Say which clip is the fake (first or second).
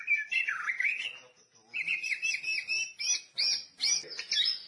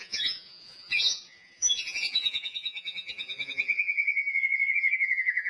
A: second